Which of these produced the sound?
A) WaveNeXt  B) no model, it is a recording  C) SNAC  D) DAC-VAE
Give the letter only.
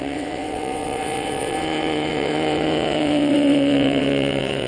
A